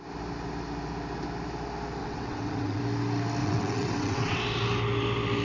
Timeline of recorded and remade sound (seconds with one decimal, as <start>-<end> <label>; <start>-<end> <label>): 0.0-2.0 recorded; 2.0-2.8 remade; 2.8-3.4 recorded; 3.4-4.4 remade; 4.4-5.4 recorded